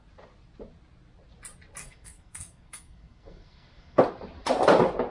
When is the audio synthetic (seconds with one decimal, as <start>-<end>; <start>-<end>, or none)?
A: 1.8-4.0